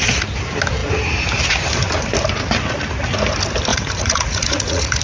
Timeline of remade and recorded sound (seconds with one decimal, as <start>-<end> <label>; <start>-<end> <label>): 0.0-3.7 recorded; 3.7-5.0 remade